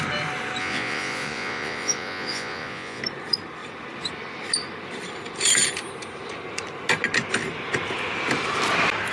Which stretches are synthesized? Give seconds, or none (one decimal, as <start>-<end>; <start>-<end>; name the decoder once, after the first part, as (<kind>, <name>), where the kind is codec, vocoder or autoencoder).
0.6-3.0 (vocoder, Vocos)

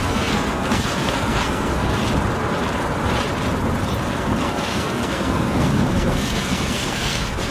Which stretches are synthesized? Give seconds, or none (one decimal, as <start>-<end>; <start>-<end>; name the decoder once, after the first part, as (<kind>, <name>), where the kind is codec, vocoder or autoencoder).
0.0-2.0 (codec, SNAC); 4.1-7.5